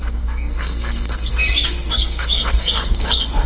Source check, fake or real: fake